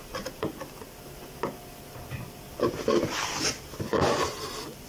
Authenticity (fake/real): real